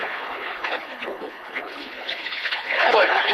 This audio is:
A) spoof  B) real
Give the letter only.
A